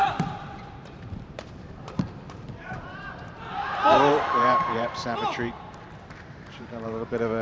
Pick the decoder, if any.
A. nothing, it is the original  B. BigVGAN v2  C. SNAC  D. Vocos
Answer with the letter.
B